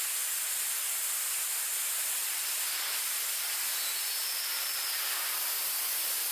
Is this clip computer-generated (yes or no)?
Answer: no